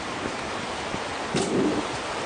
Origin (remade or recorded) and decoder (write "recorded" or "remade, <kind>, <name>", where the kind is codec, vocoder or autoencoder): recorded